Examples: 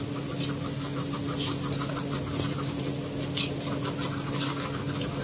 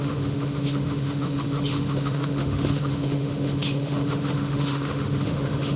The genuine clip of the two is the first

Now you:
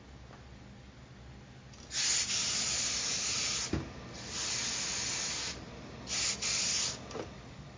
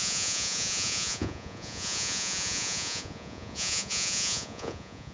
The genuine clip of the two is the first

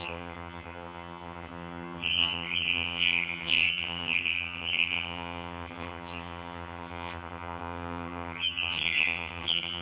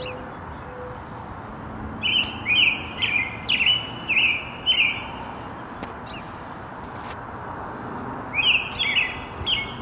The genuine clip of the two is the second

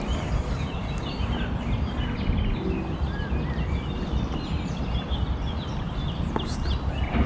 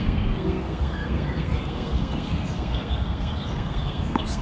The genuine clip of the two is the first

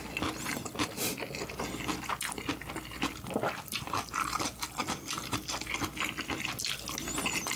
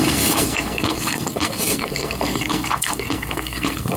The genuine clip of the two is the first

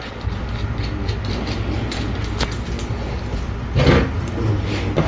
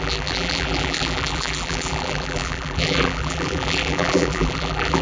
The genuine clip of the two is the first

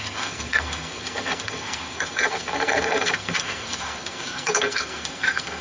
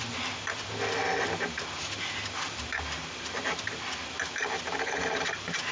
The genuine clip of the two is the second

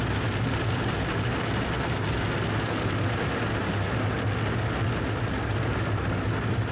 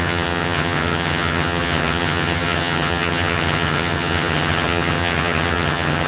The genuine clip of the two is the first